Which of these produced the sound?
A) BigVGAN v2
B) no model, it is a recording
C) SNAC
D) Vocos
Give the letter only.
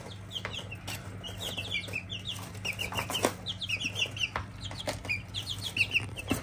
B